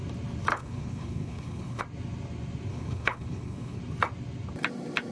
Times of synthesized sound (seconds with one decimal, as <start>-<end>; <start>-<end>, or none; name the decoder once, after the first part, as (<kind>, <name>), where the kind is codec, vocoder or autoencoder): 0.5-1.8 (codec, HILCodec); 2.7-3.8